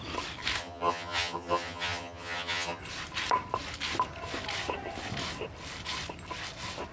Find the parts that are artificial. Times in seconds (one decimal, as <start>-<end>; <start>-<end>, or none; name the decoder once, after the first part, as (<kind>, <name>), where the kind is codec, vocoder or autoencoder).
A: 0.6-2.8 (vocoder, HiFi-GAN)